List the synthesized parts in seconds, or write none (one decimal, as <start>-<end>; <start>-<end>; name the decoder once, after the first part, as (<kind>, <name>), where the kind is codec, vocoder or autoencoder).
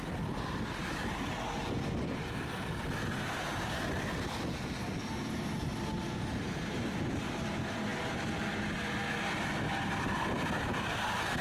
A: none